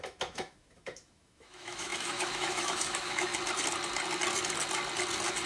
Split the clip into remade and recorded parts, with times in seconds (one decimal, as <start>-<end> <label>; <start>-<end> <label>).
0.0-3.3 remade; 3.3-5.5 recorded